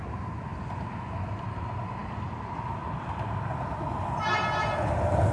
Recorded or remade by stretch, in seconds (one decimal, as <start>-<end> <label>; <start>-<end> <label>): 0.0-5.3 recorded